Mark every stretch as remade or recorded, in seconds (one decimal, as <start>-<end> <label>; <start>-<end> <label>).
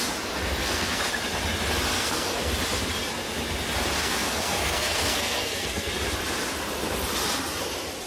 0.0-0.6 recorded; 0.6-1.2 remade; 1.2-1.9 recorded; 1.9-2.5 remade; 2.5-4.0 recorded; 4.0-5.9 remade; 5.9-8.1 recorded